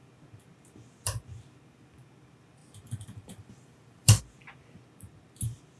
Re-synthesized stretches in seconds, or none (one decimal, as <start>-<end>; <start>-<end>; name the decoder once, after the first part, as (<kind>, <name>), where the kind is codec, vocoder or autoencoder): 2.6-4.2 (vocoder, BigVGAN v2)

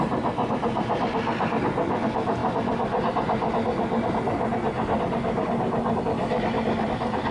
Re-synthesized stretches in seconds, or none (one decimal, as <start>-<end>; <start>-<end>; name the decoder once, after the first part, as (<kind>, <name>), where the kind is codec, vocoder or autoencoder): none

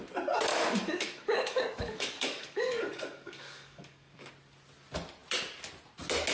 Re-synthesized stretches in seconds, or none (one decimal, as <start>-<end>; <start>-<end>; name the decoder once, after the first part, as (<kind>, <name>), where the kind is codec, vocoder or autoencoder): 0.5-4.3 (codec, DAC)

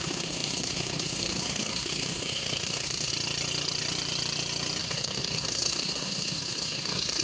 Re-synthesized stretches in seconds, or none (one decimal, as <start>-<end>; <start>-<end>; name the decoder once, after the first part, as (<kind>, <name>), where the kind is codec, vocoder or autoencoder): 0.0-3.1 (codec, SNAC); 4.8-7.2

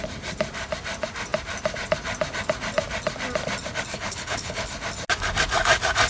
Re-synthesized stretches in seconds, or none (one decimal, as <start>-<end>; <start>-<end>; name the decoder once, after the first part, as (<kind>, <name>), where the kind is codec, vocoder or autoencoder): 3.9-4.7 (codec, HILCodec)